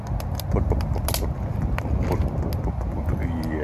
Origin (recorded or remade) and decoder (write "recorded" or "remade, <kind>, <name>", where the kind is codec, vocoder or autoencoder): recorded